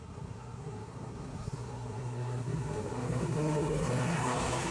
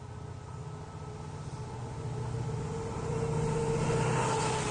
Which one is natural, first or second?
second